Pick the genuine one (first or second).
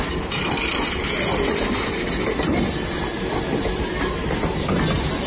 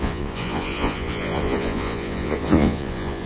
first